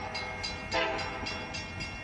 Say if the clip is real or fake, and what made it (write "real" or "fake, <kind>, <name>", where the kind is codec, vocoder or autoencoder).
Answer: real